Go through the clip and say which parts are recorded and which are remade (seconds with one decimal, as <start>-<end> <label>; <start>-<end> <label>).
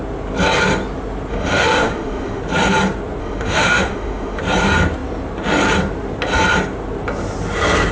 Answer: 0.0-1.3 recorded; 1.3-2.4 remade; 2.4-3.2 recorded; 3.2-4.4 remade; 4.4-7.9 recorded